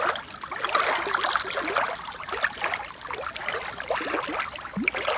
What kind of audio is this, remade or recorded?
recorded